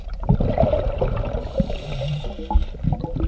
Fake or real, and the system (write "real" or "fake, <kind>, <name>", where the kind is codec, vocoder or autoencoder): real